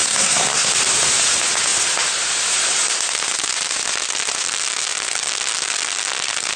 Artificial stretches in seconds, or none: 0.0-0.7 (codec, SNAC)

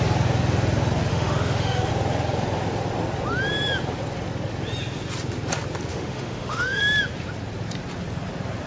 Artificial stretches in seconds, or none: 1.1-1.9 (autoencoder, DAC-VAE); 5.9-6.8

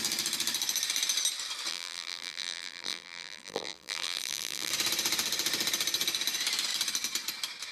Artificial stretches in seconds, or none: 1.7-4.7 (vocoder, BigVGAN v2)